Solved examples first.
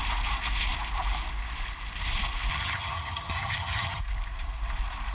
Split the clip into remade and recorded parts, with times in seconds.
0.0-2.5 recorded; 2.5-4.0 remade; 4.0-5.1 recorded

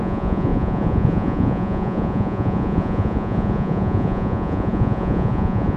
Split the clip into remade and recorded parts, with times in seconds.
0.0-5.8 remade